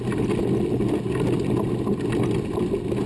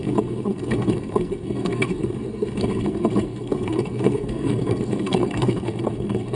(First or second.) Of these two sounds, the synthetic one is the second